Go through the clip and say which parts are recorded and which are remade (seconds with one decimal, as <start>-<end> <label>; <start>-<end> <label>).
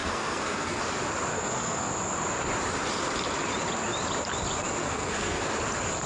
0.0-0.8 remade; 0.8-1.3 recorded; 1.3-1.9 remade; 1.9-4.8 recorded; 4.8-5.4 remade; 5.4-6.1 recorded